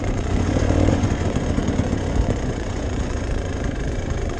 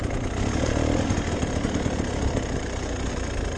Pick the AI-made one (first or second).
first